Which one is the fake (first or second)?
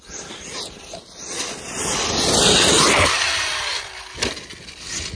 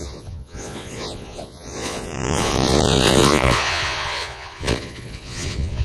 second